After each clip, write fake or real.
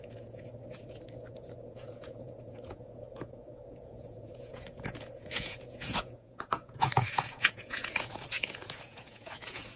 fake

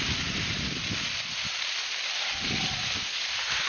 real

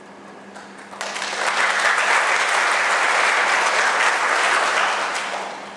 real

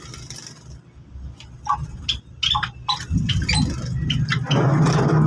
real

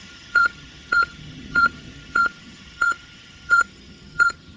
fake